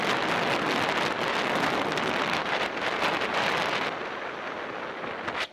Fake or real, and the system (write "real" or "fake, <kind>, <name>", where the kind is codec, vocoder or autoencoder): real